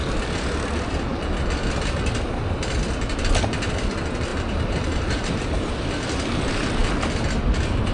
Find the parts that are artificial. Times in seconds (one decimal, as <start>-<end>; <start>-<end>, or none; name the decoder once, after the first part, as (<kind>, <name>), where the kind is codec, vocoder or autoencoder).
4.3-5.4 (vocoder, BigVGAN v2)